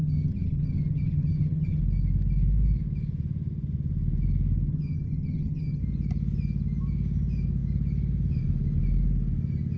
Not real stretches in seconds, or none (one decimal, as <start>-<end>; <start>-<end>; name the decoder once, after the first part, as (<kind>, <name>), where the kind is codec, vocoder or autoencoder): 0.0-1.8 (vocoder, HiFi-GAN); 4.7-5.8